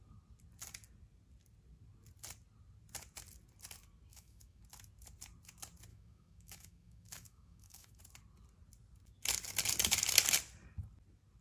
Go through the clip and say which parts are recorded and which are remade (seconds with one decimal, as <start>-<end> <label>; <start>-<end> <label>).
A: 0.0-4.1 recorded; 4.1-4.6 remade; 4.6-5.9 recorded; 5.9-8.0 remade; 8.0-11.4 recorded